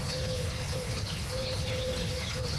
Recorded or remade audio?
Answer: remade